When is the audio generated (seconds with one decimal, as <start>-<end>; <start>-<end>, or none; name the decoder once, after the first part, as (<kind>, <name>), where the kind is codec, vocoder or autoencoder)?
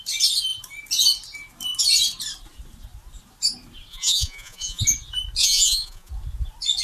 3.9-4.8 (vocoder, Vocos); 5.4-6.1